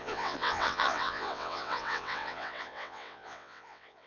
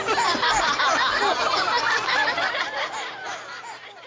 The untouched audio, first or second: second